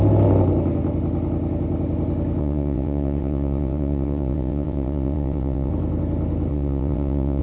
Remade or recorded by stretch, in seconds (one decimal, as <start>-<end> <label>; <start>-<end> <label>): 0.0-2.4 recorded; 2.4-5.7 remade; 5.7-6.5 recorded; 6.5-7.4 remade